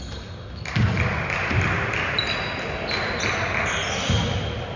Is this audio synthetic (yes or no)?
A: no